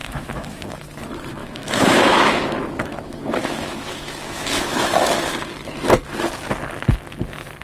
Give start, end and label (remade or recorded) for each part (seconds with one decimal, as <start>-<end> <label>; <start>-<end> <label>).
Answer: 0.0-0.8 remade; 0.8-1.4 recorded; 1.4-5.2 remade; 5.2-7.6 recorded

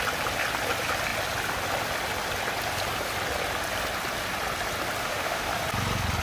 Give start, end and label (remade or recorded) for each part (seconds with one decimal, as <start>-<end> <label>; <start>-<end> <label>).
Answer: 0.0-5.0 recorded; 5.0-5.5 remade; 5.5-6.2 recorded

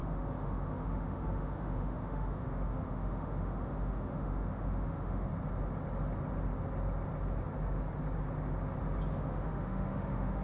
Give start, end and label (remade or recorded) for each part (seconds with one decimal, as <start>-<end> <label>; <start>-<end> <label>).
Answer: 0.0-5.3 remade; 5.3-9.1 recorded; 9.1-10.4 remade

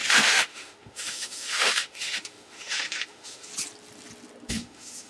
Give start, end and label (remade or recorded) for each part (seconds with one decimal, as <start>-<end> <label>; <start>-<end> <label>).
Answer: 0.0-3.5 remade; 3.5-4.5 recorded; 4.5-5.1 remade

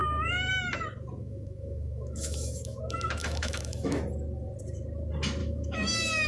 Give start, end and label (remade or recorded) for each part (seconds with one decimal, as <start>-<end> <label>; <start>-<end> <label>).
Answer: 0.0-0.5 remade; 0.5-1.2 recorded; 1.2-2.8 remade; 2.8-3.2 recorded; 3.2-4.0 remade; 4.0-5.4 recorded; 5.4-6.3 remade

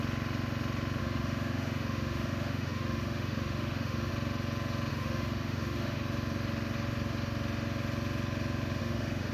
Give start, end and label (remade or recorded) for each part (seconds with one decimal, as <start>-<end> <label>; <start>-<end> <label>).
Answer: 0.0-1.0 recorded; 1.0-4.1 remade; 4.1-4.9 recorded; 4.9-6.0 remade; 6.0-8.8 recorded; 8.8-9.3 remade

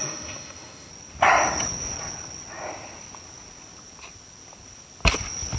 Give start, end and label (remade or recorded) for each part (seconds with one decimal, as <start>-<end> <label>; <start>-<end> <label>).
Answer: 0.0-0.9 remade; 0.9-5.6 recorded